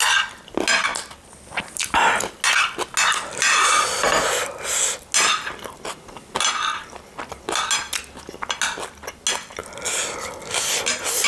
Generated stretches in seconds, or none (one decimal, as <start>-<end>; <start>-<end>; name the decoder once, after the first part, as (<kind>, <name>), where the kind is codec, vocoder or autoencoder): none